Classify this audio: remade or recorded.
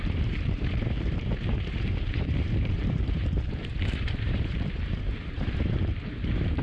remade